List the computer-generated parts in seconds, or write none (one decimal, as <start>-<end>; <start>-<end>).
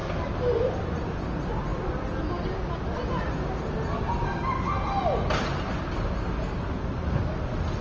0.0-0.7